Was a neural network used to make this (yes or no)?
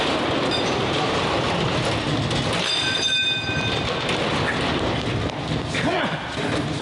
no